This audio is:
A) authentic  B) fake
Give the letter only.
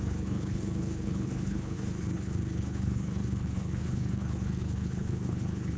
B